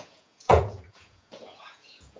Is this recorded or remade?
remade